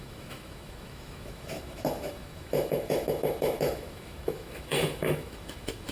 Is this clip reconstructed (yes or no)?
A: yes